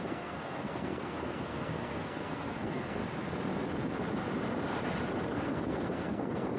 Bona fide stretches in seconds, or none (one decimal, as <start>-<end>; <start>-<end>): 3.0-5.3